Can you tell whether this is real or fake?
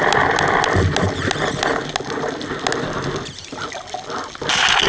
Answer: real